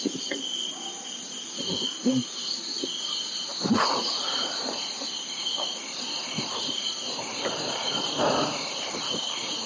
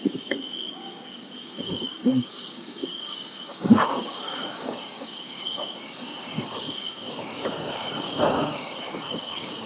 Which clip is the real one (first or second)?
first